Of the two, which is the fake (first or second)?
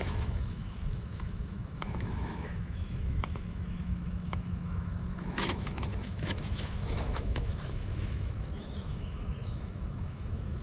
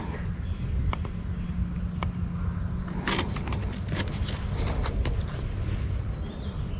first